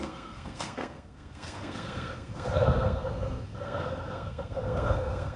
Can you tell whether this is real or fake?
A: fake